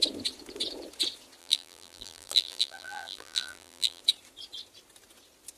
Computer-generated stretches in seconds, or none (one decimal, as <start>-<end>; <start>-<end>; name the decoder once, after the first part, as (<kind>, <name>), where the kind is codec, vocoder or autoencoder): 1.4-4.0 (vocoder, BigVGAN v2)